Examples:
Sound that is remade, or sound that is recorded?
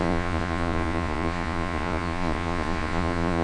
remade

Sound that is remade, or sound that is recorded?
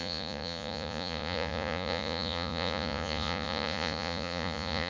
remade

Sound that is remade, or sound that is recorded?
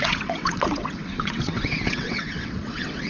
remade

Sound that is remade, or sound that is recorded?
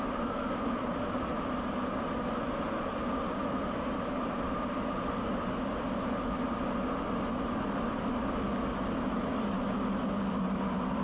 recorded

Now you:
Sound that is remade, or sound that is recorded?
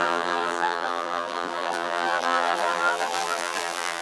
remade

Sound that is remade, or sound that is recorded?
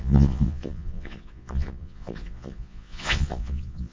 remade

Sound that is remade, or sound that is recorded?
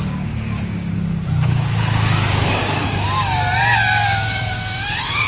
remade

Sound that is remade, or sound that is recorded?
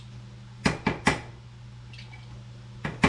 recorded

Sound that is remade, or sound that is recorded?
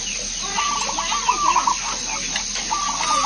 recorded